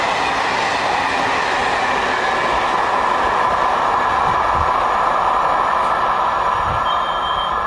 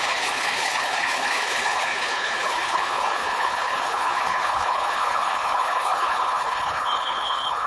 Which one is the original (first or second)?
first